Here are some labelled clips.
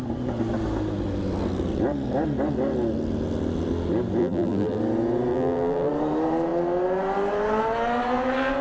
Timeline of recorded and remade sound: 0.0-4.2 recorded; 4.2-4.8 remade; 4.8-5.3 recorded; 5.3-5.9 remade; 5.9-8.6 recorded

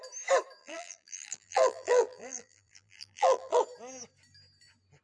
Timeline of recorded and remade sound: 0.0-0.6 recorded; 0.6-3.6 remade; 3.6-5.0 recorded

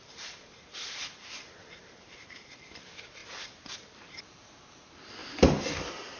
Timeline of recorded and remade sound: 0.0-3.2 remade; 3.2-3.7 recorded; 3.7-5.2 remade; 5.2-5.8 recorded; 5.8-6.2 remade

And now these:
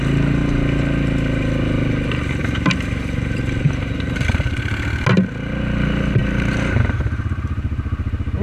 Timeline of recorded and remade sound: 0.0-2.4 recorded; 2.4-4.6 remade; 4.6-6.2 recorded; 6.2-7.3 remade; 7.3-8.4 recorded

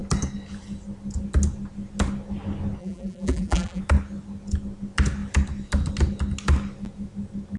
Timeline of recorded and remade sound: 0.0-2.8 recorded; 2.8-3.8 remade; 3.8-7.6 recorded

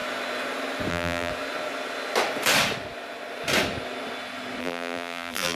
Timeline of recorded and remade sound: 0.0-0.9 recorded; 0.9-1.3 remade; 1.3-4.6 recorded; 4.6-5.5 remade